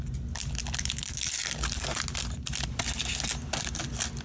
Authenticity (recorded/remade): recorded